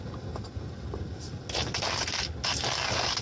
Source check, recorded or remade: recorded